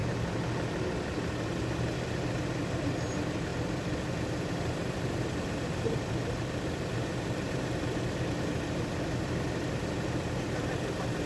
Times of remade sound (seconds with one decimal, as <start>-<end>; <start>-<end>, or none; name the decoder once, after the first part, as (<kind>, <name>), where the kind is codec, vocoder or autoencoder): 3.5-7.5 (vocoder, BigVGAN v2)